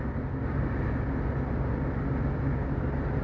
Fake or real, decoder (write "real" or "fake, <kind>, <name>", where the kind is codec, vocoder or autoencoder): real